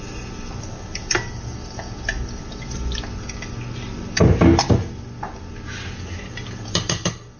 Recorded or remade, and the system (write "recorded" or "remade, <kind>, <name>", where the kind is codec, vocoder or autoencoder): recorded